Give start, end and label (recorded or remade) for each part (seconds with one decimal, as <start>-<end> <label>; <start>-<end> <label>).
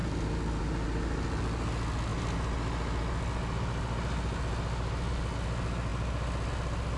0.0-7.0 recorded